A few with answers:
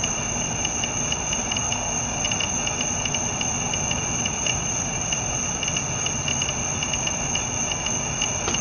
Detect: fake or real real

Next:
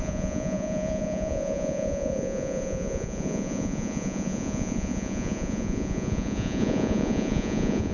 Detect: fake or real fake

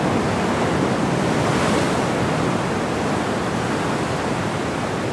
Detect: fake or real real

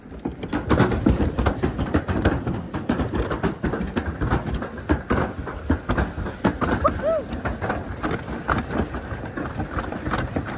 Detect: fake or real real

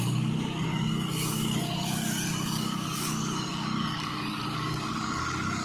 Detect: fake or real fake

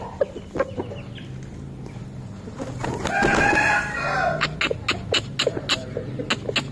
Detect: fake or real real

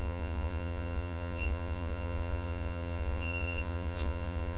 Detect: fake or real fake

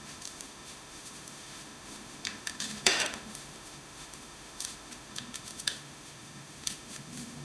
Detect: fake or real fake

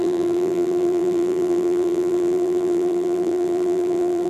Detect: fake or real fake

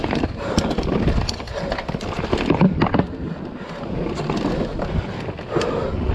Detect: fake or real real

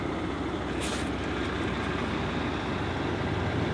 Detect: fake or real real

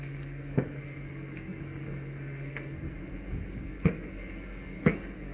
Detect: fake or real fake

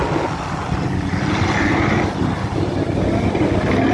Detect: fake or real real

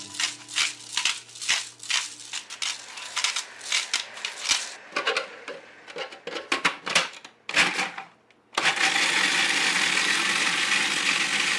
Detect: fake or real real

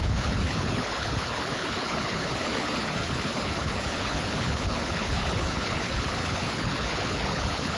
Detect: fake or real fake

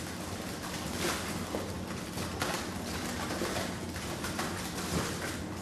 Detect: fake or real real